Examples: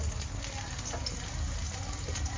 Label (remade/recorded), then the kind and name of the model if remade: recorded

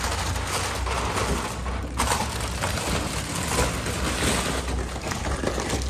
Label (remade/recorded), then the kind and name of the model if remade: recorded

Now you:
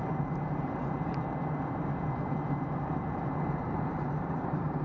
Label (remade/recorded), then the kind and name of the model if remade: remade, vocoder, BigVGAN v2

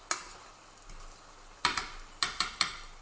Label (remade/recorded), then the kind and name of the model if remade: recorded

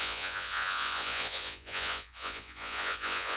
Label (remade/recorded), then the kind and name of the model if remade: remade, vocoder, Vocos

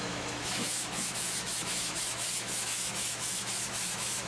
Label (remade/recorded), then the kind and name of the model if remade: remade, autoencoder, DAC-VAE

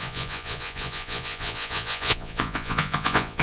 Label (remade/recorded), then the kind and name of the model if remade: remade, vocoder, Vocos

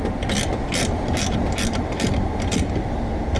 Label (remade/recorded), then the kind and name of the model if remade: recorded